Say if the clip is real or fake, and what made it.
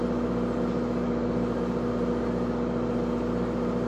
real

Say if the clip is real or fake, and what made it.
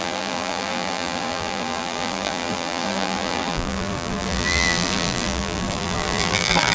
fake, vocoder, BigVGAN v2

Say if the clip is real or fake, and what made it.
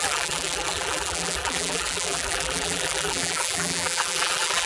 fake, vocoder, BigVGAN v2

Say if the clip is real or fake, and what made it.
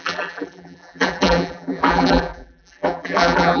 fake, vocoder, BigVGAN v2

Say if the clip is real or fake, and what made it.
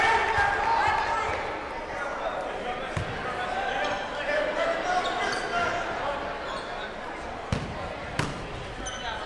real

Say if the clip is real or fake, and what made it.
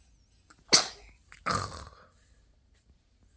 real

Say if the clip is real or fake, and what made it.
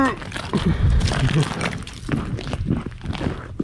real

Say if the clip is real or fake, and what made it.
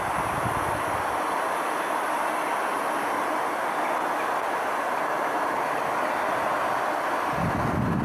real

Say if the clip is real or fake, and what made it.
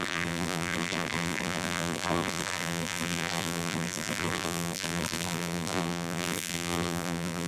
fake, vocoder, BigVGAN v2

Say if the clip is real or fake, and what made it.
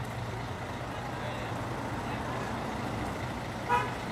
real